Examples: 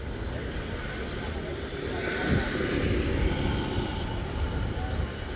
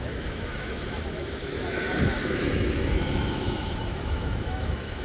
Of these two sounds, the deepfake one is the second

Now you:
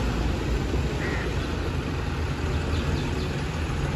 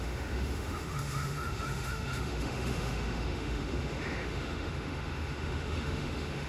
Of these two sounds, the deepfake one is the second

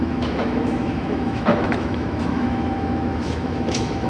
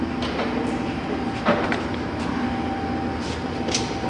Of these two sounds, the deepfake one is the first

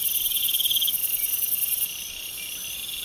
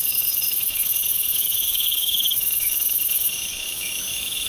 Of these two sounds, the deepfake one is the second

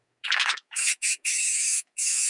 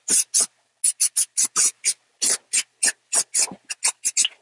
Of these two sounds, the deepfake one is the first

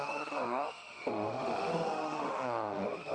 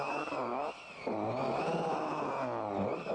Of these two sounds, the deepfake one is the first